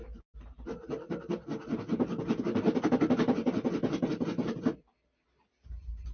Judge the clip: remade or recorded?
recorded